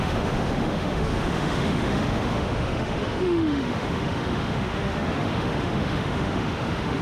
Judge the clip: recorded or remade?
remade